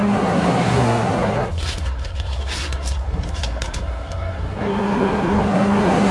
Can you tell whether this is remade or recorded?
remade